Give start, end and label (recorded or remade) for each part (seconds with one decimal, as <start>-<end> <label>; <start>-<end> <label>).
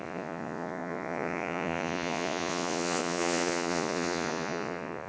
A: 0.0-5.1 remade